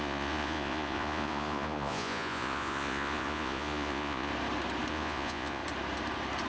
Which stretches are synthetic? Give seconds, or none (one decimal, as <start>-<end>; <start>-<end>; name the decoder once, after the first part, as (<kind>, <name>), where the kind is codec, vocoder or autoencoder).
0.0-4.3 (vocoder, Vocos); 4.9-5.6